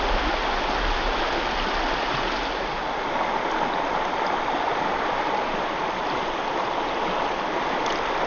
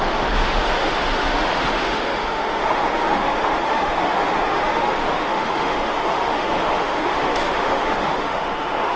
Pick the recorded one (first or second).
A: first